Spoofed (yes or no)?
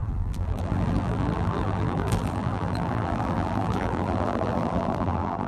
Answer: yes